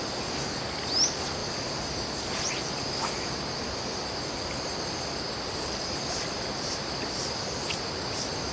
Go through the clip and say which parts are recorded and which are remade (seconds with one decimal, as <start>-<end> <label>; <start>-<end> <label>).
0.0-1.4 recorded; 1.4-4.0 remade; 4.0-8.5 recorded